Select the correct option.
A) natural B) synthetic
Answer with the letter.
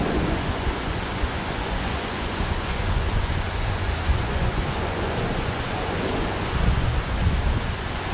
B